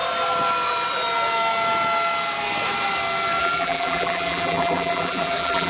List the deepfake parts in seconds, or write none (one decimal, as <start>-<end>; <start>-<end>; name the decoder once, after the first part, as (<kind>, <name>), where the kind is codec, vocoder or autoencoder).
3.4-5.7 (vocoder, BigVGAN v2)